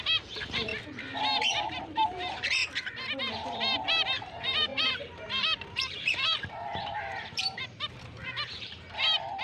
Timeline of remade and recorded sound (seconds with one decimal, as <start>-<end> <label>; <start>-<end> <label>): 0.0-0.7 remade; 0.7-1.4 recorded; 1.4-2.6 remade; 2.6-3.3 recorded; 3.3-9.4 remade